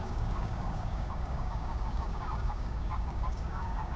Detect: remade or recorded remade